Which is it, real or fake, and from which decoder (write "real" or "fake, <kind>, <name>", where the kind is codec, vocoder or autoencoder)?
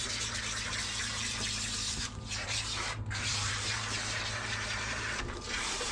fake, vocoder, BigVGAN v2